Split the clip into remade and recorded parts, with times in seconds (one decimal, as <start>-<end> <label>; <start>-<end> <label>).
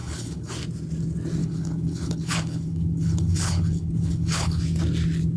0.0-0.5 remade; 0.5-1.4 recorded; 1.4-4.6 remade; 4.6-5.4 recorded